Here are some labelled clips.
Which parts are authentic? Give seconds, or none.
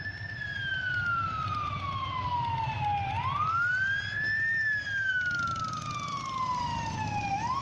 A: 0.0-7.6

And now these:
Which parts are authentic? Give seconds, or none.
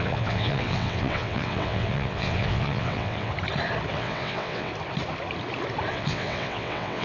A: 3.3-3.9; 4.7-5.9